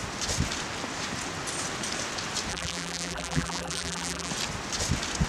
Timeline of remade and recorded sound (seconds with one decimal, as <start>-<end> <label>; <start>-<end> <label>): 0.0-2.5 recorded; 2.5-4.3 remade; 4.3-5.3 recorded